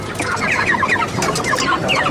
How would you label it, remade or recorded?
remade